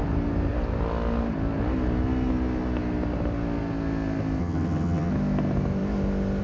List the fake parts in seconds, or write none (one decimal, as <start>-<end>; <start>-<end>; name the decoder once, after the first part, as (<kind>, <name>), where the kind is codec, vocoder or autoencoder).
4.4-5.1 (vocoder, HiFi-GAN)